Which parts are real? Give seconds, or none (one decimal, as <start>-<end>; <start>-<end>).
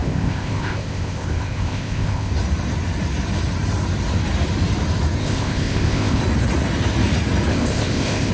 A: 2.3-5.2; 6.2-7.5